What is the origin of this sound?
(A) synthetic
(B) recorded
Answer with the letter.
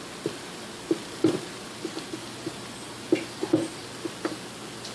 B